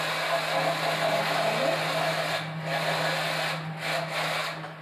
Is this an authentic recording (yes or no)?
yes